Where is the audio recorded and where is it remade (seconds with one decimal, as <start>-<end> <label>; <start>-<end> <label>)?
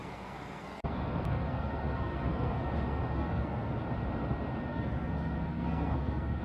0.0-3.8 remade; 3.8-4.7 recorded; 4.7-6.4 remade